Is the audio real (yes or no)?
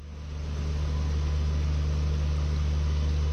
yes